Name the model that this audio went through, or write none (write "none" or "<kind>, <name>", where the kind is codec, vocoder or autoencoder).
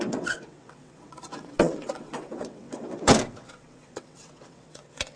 vocoder, WaveNeXt